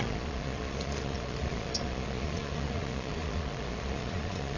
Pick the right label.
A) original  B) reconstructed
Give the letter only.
B